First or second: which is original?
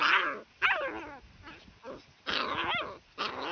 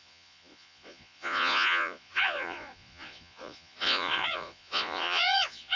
first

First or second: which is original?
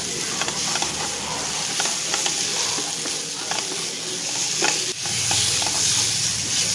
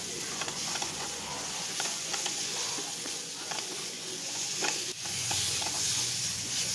first